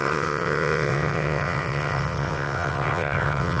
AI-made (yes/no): yes